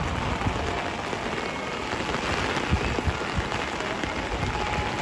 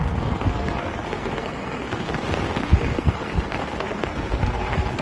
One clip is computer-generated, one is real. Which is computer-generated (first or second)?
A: second